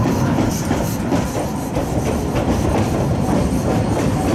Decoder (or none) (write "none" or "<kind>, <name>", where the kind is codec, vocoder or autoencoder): vocoder, BigVGAN v2